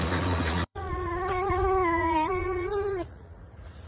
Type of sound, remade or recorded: remade